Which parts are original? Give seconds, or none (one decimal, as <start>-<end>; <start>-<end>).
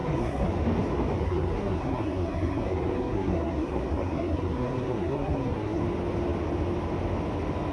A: 0.5-1.2; 5.8-7.7